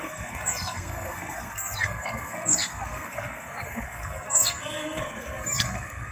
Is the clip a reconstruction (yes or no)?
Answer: yes